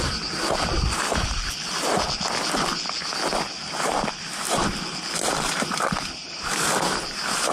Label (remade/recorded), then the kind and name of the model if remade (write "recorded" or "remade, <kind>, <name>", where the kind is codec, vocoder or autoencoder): recorded